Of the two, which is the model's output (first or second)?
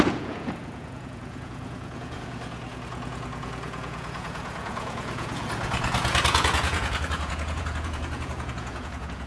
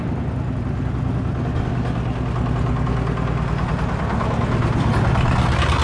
first